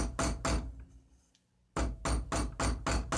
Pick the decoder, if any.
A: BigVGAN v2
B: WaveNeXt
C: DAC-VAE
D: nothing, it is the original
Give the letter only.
D